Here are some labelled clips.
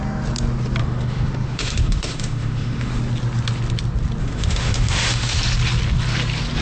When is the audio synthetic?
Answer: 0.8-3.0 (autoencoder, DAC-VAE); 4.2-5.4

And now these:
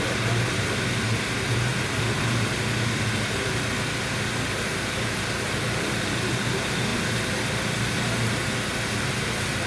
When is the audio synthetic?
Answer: none

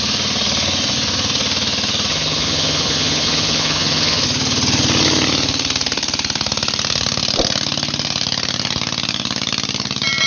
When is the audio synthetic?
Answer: 2.1-4.2 (vocoder, HiFi-GAN)

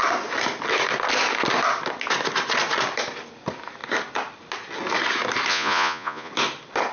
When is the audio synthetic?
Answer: 5.5-6.3 (vocoder, Vocos)

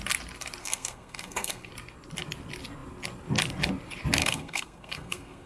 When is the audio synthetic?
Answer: 0.6-1.7 (codec, SNAC); 4.2-5.5